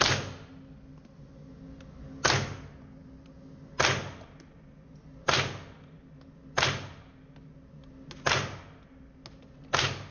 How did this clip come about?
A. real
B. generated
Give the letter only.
A